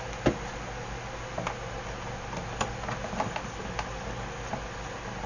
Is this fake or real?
real